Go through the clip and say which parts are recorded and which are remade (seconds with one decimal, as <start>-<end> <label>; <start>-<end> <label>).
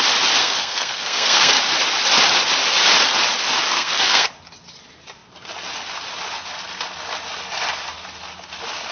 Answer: 0.0-0.4 recorded; 0.4-1.6 remade; 1.6-3.7 recorded; 3.7-4.3 remade; 4.3-8.9 recorded